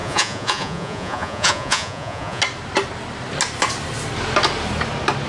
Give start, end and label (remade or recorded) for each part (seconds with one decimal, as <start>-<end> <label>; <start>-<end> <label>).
0.0-2.4 remade; 2.4-5.3 recorded